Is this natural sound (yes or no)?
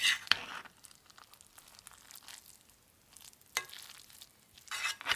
yes